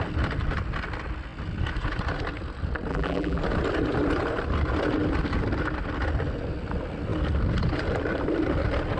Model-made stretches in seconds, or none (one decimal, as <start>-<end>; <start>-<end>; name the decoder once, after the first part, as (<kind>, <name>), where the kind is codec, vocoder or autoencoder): 2.9-3.4 (vocoder, BigVGAN v2)